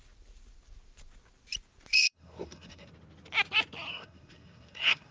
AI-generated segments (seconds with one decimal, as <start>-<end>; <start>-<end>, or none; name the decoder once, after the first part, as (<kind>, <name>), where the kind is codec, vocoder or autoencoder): 1.9-2.9 (codec, SNAC); 3.9-5.1